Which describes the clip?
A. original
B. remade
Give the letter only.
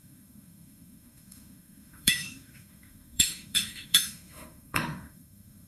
B